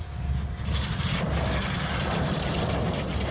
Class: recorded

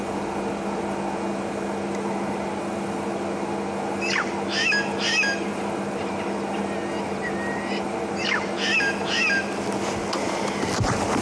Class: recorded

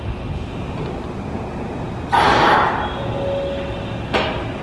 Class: recorded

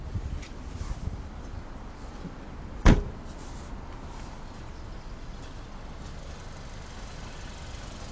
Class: recorded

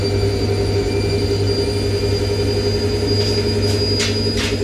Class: recorded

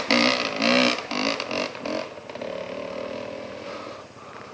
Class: recorded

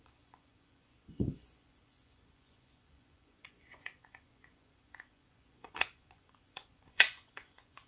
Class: remade